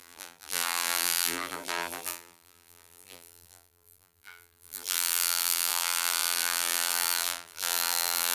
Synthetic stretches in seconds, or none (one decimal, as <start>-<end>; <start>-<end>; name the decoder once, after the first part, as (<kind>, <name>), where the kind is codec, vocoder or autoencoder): 0.0-8.3 (vocoder, BigVGAN v2)